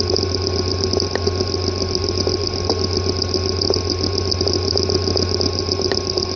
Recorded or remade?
recorded